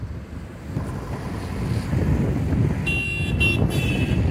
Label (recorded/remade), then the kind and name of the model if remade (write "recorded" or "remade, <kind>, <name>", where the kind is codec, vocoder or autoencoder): recorded